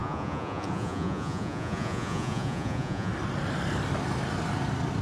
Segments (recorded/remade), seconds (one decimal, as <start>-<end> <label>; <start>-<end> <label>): 0.0-3.1 remade; 3.1-5.0 recorded

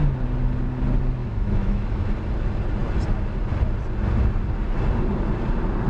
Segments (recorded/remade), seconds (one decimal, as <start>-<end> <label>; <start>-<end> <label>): 0.0-1.2 recorded; 1.2-2.1 remade; 2.1-5.9 recorded

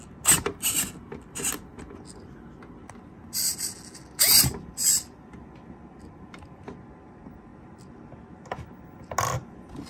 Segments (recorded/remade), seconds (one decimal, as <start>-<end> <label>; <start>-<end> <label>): 0.0-9.9 recorded

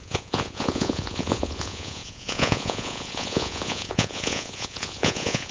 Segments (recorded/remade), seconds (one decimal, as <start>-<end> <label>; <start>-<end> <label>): 0.0-5.5 remade